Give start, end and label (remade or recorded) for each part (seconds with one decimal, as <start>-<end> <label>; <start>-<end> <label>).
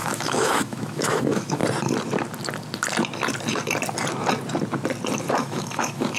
0.0-1.6 remade; 1.6-5.3 recorded; 5.3-6.2 remade